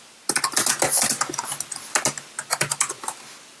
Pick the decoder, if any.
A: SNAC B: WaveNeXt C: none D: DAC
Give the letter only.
C